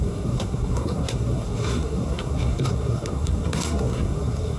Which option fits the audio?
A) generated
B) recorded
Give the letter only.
A